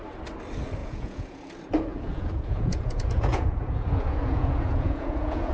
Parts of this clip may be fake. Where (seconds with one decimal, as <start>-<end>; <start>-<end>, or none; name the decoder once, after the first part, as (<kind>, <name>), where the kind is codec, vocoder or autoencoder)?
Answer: 0.8-1.4 (vocoder, Vocos); 1.9-5.5